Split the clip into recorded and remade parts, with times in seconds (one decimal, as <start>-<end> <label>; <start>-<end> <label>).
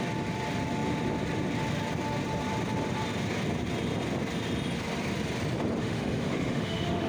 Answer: 0.0-5.8 recorded; 5.8-7.1 remade